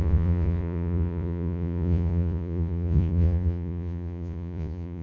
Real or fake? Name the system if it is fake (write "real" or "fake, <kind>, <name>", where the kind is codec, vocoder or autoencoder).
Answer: fake, vocoder, Vocos